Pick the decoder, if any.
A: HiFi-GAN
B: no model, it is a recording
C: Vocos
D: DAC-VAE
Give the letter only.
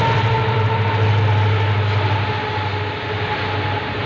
B